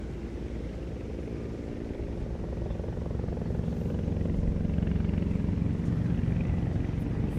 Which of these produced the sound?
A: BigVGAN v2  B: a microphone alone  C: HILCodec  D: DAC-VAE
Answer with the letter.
B